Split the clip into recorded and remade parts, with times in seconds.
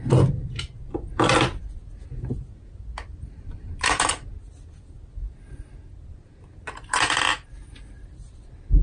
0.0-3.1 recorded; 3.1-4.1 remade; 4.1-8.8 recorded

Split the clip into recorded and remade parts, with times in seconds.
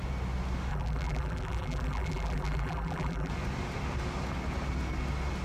0.0-0.7 recorded; 0.7-3.3 remade; 3.3-5.4 recorded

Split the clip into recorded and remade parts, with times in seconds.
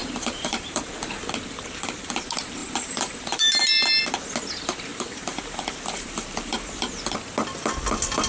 0.0-0.9 remade; 0.9-2.6 recorded; 2.6-4.0 remade; 4.0-4.9 recorded; 4.9-7.0 remade; 7.0-8.3 recorded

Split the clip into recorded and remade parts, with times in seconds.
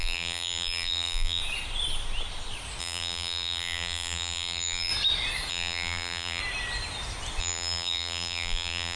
0.0-1.4 remade; 1.4-2.8 recorded; 2.8-4.9 remade; 4.9-5.5 recorded; 5.5-6.4 remade; 6.4-7.4 recorded; 7.4-9.0 remade